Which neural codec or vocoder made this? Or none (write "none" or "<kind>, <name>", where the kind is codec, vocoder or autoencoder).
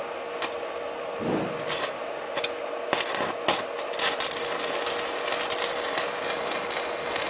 none